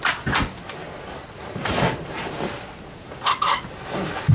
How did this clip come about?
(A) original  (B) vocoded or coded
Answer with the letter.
A